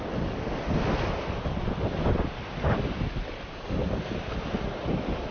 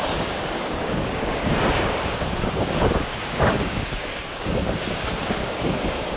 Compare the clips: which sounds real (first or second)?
first